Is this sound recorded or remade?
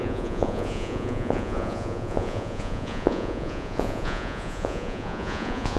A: remade